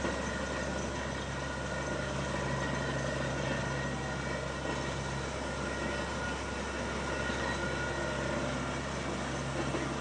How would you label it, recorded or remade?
recorded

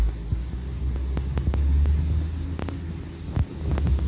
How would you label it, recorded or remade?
recorded